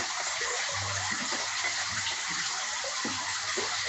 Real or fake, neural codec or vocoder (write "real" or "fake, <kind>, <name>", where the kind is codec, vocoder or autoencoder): real